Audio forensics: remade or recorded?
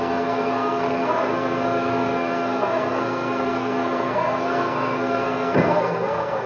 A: remade